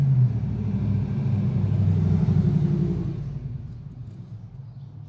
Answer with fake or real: real